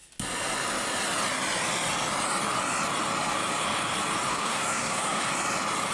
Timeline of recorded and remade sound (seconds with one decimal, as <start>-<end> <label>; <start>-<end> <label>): 0.0-4.3 recorded; 4.3-5.3 remade; 5.3-5.9 recorded